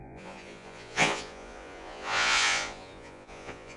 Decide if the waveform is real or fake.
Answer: fake